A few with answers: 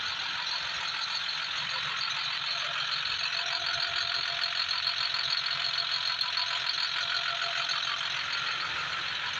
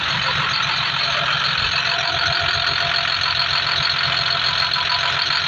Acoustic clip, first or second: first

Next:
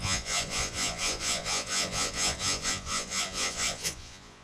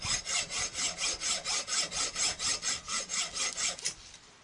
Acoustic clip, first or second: second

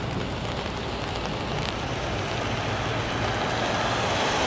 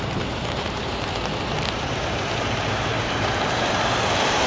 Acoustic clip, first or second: first